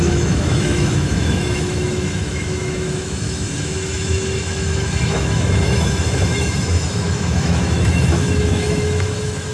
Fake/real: fake